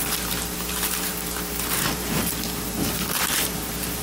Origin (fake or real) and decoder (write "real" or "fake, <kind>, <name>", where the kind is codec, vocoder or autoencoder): fake, vocoder, BigVGAN v2